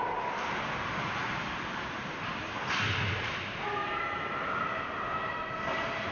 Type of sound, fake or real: real